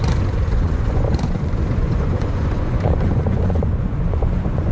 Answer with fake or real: fake